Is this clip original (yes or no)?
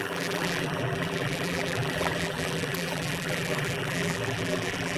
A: no